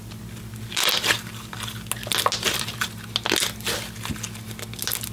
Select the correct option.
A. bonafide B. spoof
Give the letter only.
A